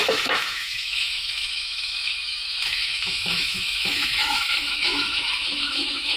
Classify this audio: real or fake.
fake